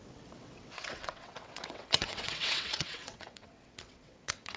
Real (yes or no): no